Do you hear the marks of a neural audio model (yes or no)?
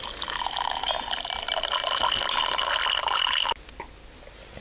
no